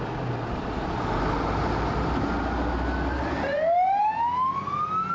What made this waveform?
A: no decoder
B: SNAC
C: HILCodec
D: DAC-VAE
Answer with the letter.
A